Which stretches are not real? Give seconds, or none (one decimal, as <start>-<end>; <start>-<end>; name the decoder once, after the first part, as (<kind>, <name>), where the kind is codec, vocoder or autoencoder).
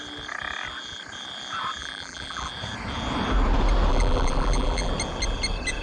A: 1.8-2.5 (vocoder, BigVGAN v2); 3.9-4.9